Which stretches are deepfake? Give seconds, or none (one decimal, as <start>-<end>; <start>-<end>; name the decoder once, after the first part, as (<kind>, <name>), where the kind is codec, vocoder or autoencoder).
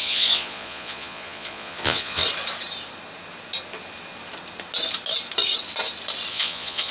0.0-2.2 (vocoder, Vocos); 6.3-6.9